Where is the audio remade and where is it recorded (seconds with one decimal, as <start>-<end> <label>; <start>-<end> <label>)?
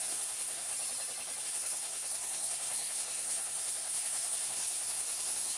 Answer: 0.0-0.7 remade; 0.7-1.4 recorded; 1.4-5.6 remade